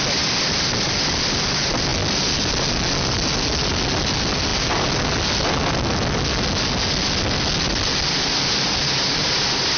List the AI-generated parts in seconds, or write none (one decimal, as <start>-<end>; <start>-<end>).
none

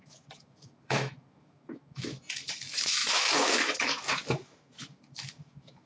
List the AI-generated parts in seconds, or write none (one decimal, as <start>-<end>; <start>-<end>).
0.0-5.9

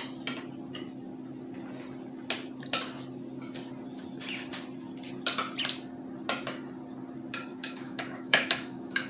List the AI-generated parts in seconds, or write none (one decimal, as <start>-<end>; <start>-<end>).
7.5-9.1